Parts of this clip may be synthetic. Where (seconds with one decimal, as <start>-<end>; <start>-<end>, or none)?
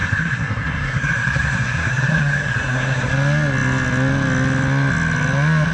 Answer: 0.0-3.1